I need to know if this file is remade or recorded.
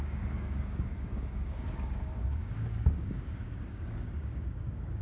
remade